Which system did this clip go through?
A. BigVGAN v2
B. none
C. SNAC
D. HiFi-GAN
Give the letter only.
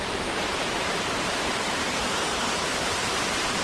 A